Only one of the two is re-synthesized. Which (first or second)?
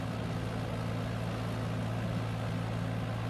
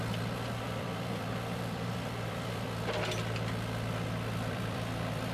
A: second